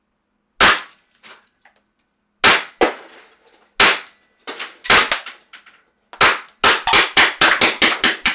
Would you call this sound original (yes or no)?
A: yes